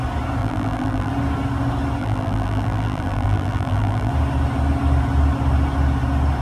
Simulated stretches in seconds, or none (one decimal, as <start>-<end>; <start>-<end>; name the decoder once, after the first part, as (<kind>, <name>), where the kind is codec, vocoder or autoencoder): 0.4-1.1 (vocoder, BigVGAN v2); 2.0-4.1